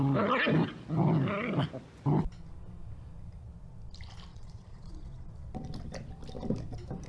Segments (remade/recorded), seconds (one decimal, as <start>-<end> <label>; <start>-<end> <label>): 0.0-4.3 recorded; 4.3-5.3 remade; 5.3-7.1 recorded